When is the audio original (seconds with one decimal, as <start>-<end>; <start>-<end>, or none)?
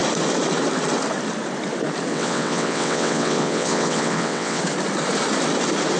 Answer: 0.0-2.1; 4.6-6.0